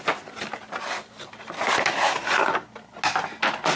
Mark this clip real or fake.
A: real